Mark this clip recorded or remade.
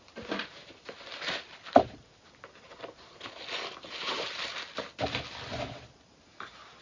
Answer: recorded